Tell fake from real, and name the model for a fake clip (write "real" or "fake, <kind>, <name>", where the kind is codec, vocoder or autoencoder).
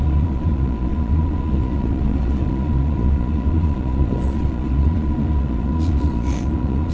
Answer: fake, vocoder, Vocos